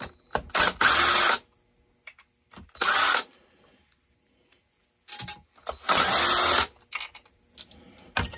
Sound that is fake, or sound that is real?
real